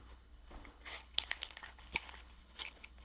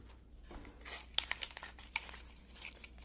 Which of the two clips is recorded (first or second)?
second